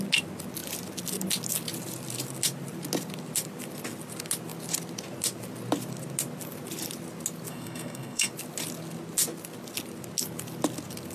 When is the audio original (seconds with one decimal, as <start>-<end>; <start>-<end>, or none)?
0.0-7.5; 8.3-11.1